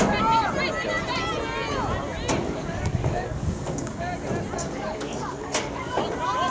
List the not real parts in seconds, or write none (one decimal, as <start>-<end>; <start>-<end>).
2.4-4.1; 4.6-6.0